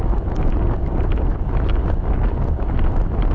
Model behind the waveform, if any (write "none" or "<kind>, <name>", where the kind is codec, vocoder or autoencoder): none